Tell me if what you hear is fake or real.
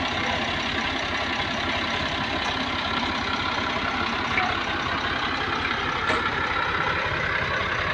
real